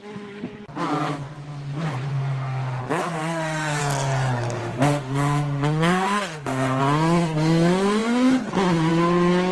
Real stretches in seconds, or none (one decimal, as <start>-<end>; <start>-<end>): 0.0-2.1; 2.8-3.2; 3.8-4.6; 6.8-9.5